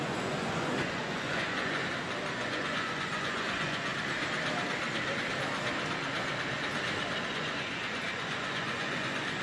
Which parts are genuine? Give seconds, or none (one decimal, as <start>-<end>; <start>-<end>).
1.8-2.3; 3.9-7.3